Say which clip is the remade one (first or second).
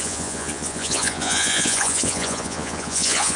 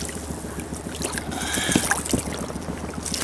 first